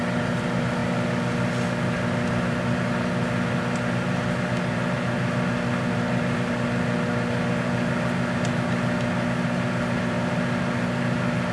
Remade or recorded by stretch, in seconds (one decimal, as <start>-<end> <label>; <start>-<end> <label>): 0.0-11.5 recorded